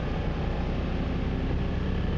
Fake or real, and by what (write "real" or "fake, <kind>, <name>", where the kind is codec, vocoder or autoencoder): real